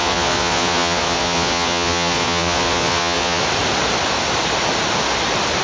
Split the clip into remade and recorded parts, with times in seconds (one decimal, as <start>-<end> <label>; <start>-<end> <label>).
0.0-3.4 remade; 3.4-5.6 recorded